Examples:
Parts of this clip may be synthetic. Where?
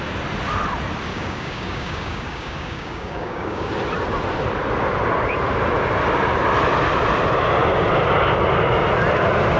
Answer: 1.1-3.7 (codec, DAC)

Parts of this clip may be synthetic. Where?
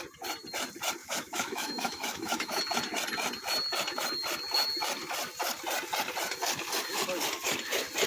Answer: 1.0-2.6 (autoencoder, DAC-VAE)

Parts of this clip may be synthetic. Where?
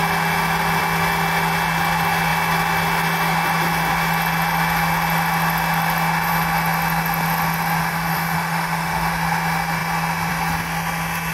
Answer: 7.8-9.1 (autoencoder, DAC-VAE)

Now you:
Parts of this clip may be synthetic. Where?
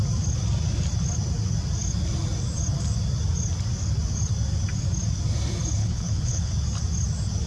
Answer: 5.8-6.5 (codec, HILCodec)